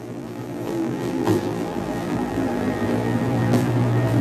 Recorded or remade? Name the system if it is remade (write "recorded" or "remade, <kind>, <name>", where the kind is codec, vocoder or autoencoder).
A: remade, vocoder, BigVGAN v2